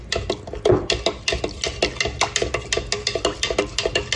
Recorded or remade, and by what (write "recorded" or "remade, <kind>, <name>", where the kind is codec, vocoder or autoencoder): recorded